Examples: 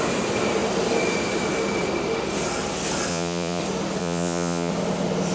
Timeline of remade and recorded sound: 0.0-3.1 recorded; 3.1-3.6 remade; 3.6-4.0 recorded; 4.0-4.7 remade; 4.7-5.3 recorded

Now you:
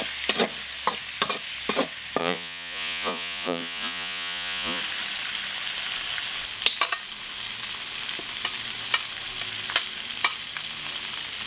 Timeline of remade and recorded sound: 0.0-2.2 recorded; 2.2-4.8 remade; 4.8-11.5 recorded

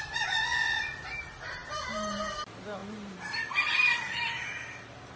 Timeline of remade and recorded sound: 0.0-5.2 recorded

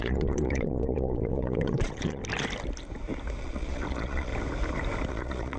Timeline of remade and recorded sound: 0.0-2.2 remade; 2.2-3.4 recorded; 3.4-4.3 remade; 4.3-5.1 recorded; 5.1-5.6 remade

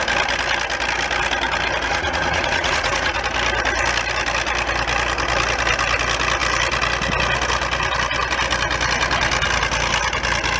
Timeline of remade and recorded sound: 0.0-1.9 recorded; 1.9-3.2 remade; 3.2-10.6 recorded

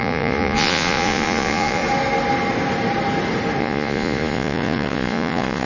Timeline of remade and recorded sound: 0.0-1.8 remade; 1.8-3.6 recorded; 3.6-5.7 remade

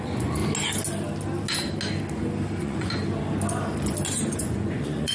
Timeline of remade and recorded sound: 0.0-0.4 remade; 0.4-2.6 recorded; 2.6-3.0 remade; 3.0-4.4 recorded; 4.4-5.1 remade

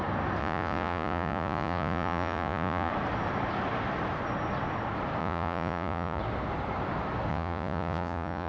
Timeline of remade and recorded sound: 0.0-0.4 recorded; 0.4-2.9 remade; 2.9-5.2 recorded; 5.2-6.2 remade; 6.2-7.3 recorded; 7.3-8.5 remade